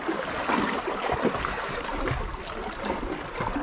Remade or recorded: recorded